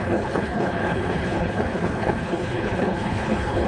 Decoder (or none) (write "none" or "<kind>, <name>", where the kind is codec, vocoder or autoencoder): codec, HILCodec